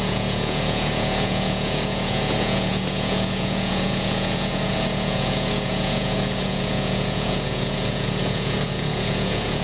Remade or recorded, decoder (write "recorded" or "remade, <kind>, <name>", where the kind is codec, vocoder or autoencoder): remade, vocoder, Vocos